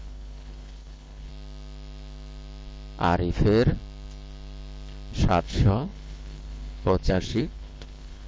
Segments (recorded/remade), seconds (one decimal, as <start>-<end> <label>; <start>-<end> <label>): 0.0-1.3 remade; 1.3-5.4 recorded; 5.4-8.3 remade